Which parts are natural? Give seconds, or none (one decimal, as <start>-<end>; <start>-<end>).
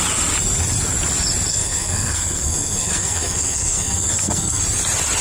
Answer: 0.0-1.5; 4.6-5.2